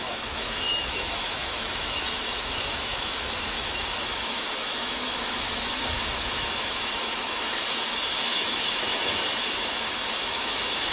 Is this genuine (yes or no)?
no